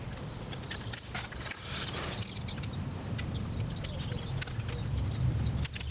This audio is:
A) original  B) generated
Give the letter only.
A